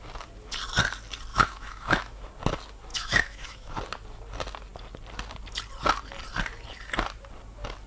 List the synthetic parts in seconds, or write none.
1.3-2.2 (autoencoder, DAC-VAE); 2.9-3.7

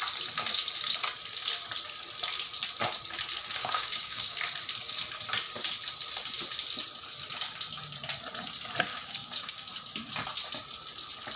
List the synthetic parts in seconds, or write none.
3.6-4.4 (codec, DAC); 8.9-9.7